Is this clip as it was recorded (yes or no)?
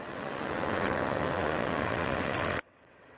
no